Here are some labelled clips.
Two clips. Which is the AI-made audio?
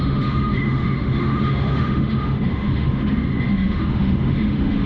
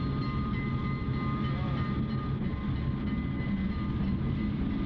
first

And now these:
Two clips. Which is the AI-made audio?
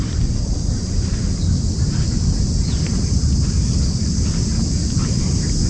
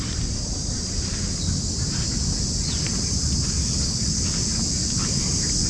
first